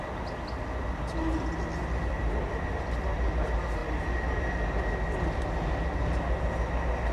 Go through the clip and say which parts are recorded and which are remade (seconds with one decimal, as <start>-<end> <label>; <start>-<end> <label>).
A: 0.0-1.7 recorded; 1.7-2.8 remade; 2.8-3.8 recorded; 3.8-4.8 remade; 4.8-7.1 recorded